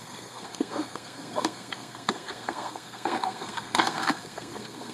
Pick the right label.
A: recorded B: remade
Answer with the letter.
B